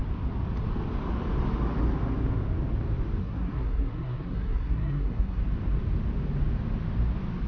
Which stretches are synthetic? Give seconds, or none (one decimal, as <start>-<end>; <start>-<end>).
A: 3.2-5.4

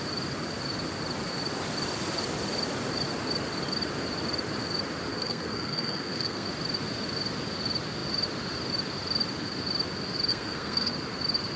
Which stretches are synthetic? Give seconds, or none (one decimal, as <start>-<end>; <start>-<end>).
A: 5.1-6.5; 10.3-10.9

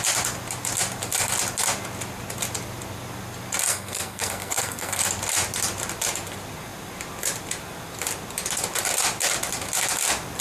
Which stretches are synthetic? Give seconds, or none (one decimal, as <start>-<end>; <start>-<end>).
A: 3.7-5.0

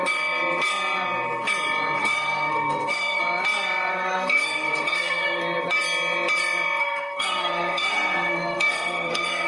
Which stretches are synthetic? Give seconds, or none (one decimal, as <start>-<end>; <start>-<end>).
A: 2.0-3.2; 3.9-5.4; 6.8-9.5

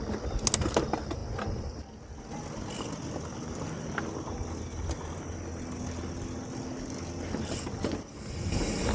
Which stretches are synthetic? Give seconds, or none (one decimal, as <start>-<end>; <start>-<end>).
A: none